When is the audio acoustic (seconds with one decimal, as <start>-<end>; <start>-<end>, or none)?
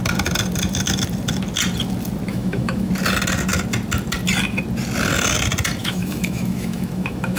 0.0-2.3; 2.9-5.8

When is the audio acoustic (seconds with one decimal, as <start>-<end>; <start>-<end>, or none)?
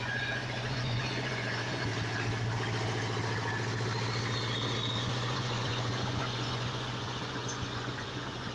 1.9-5.0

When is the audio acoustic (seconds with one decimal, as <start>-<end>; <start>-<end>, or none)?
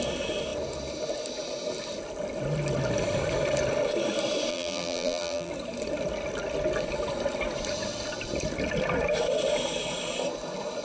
0.0-4.5; 5.5-10.8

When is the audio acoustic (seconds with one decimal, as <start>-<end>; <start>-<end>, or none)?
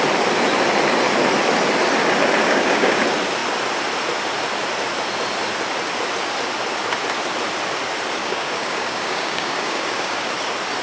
0.0-2.4; 3.0-8.2; 10.3-10.8